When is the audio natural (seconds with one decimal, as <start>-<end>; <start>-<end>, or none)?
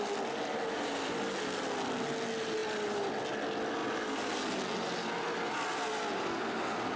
0.0-7.0